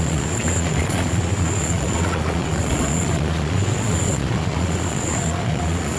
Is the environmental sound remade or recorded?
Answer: remade